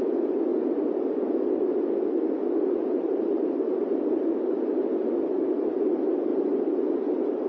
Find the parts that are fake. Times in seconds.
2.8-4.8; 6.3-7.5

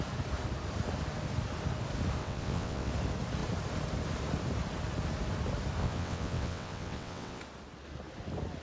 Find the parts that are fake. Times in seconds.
2.2-2.9; 5.8-7.4

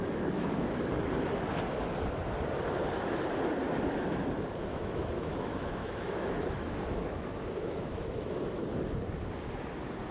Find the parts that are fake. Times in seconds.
0.0-0.8; 4.7-8.6

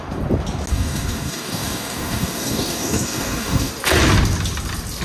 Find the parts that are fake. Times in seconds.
0.7-3.7

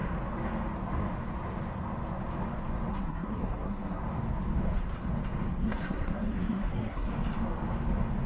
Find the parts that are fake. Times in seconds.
2.9-4.0; 5.6-7.1

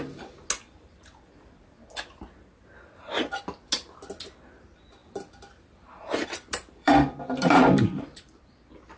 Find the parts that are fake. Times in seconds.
5.0-8.4

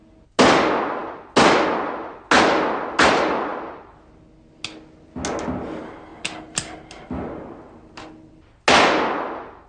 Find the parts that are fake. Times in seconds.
none

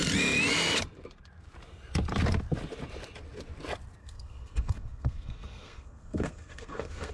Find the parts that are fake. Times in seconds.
4.0-7.1